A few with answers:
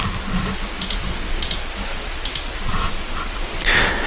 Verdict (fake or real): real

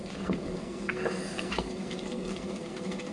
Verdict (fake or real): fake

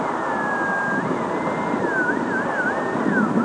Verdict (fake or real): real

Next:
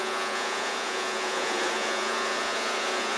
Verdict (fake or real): fake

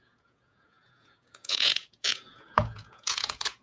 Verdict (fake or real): fake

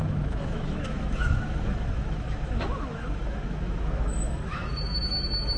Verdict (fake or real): fake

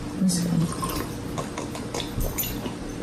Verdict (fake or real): real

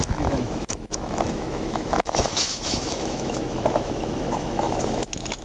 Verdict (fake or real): fake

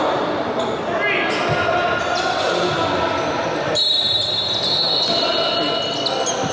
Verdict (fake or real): real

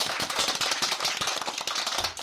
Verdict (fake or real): real